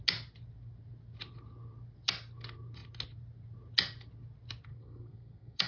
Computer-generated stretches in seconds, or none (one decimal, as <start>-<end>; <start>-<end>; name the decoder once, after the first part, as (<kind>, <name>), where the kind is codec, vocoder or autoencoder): 4.7-5.7 (codec, SNAC)